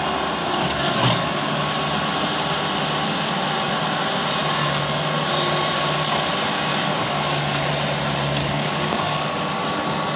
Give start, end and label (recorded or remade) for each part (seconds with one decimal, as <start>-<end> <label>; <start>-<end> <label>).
0.0-0.4 recorded; 0.4-1.7 remade; 1.7-6.7 recorded; 6.7-7.7 remade; 7.7-8.4 recorded; 8.4-9.3 remade; 9.3-10.2 recorded